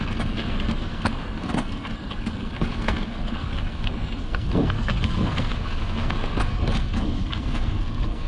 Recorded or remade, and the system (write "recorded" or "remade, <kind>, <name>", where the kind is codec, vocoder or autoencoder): remade, codec, SNAC